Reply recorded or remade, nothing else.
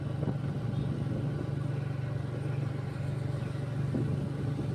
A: recorded